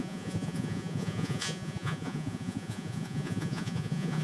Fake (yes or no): yes